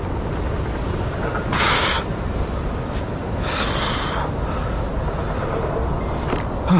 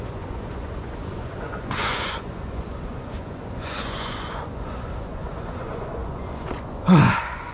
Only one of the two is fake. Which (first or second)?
second